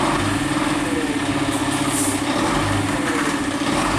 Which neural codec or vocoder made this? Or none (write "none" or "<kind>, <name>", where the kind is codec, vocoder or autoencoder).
none